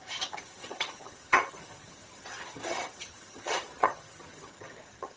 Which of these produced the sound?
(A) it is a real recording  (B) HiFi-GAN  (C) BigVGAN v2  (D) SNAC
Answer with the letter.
B